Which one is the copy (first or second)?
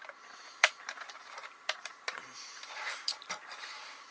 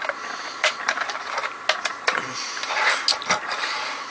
first